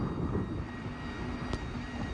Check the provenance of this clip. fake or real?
real